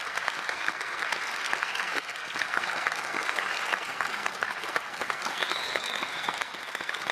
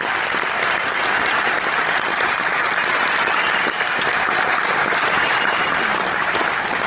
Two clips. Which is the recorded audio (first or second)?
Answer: second